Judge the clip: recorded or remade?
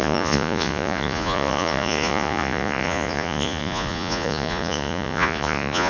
remade